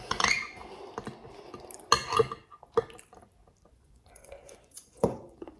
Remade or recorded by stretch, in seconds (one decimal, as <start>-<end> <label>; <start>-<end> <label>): 0.0-0.6 remade; 0.6-3.7 recorded; 3.7-5.6 remade